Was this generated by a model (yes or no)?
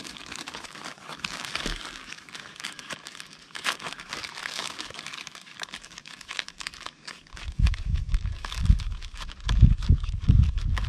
yes